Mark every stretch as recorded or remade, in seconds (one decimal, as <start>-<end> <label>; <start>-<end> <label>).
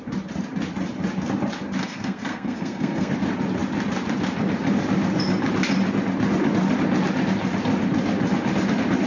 0.0-1.8 recorded; 1.8-3.1 remade; 3.1-9.1 recorded